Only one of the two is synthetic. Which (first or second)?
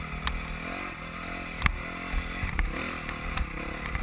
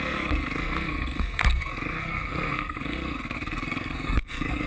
second